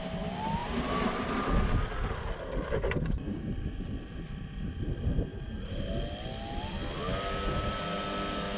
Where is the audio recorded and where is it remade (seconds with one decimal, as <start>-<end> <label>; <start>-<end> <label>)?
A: 0.0-0.6 recorded; 0.6-1.4 remade; 1.4-5.3 recorded; 5.3-5.9 remade; 5.9-8.6 recorded

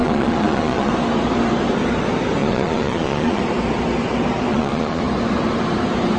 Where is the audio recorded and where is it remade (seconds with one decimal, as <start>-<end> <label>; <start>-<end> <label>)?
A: 0.0-0.9 remade; 0.9-2.4 recorded; 2.4-3.4 remade; 3.4-4.5 recorded; 4.5-5.0 remade; 5.0-6.2 recorded

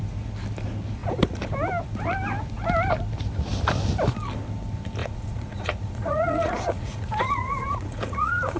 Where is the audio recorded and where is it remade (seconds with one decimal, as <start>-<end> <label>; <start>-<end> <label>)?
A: 0.0-1.0 recorded; 1.0-1.5 remade; 1.5-5.0 recorded; 5.0-8.6 remade

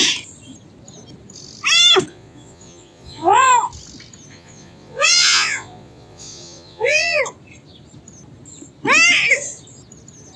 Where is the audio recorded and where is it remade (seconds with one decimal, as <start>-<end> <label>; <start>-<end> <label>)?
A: 0.0-2.1 recorded; 2.1-3.5 remade; 3.5-4.3 recorded; 4.3-7.2 remade; 7.2-10.4 recorded